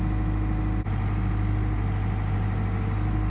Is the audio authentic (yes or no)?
yes